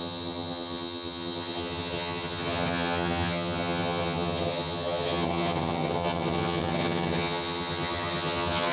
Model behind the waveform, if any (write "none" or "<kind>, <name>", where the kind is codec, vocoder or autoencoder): vocoder, HiFi-GAN